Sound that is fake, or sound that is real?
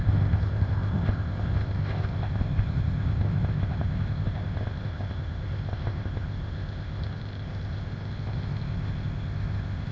fake